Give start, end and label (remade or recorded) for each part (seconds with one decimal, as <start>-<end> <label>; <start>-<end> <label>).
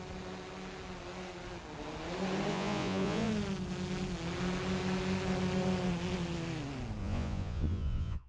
0.0-2.5 recorded; 2.5-3.3 remade; 3.3-7.0 recorded; 7.0-8.3 remade